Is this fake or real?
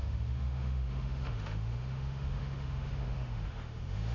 fake